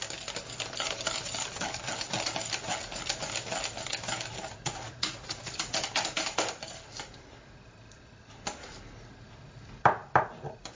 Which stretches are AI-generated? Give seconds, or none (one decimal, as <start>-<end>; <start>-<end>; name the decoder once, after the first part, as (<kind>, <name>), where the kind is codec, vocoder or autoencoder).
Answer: 4.5-5.5 (vocoder, Vocos)